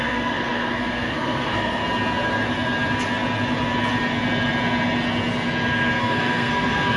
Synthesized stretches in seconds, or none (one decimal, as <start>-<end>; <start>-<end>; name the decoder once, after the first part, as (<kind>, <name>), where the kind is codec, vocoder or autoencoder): 0.0-1.8 (codec, SNAC); 6.0-7.0

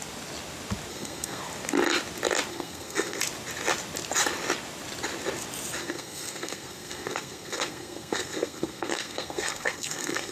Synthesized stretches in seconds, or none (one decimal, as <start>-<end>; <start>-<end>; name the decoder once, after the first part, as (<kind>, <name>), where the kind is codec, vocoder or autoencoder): 0.9-1.4 (codec, SNAC); 2.5-3.2; 5.8-10.3

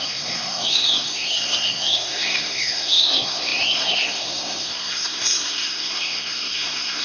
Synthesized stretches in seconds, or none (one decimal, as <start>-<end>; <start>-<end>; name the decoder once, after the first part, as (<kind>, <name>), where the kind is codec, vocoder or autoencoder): 0.0-7.0 (codec, SNAC)

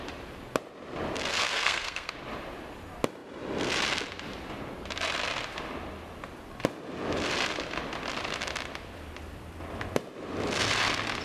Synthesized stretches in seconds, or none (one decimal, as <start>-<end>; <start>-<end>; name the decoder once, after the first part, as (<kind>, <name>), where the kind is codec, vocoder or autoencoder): 1.3-2.1 (codec, SNAC)

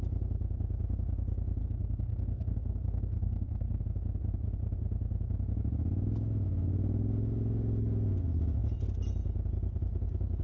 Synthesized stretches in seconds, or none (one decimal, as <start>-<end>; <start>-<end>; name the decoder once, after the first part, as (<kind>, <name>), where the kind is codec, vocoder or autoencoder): 1.6-3.8 (codec, SNAC)

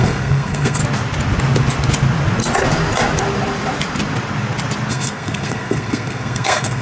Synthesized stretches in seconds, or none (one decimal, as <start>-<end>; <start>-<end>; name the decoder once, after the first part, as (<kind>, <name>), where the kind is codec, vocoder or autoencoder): 0.0-0.8 (codec, SNAC); 4.9-6.8

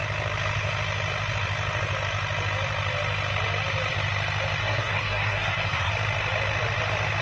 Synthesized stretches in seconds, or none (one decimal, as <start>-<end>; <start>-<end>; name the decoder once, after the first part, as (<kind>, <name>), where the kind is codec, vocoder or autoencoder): 4.6-5.9 (codec, SNAC)

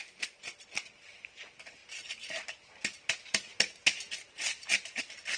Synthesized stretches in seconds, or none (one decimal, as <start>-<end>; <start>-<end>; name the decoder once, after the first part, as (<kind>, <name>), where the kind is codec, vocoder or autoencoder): none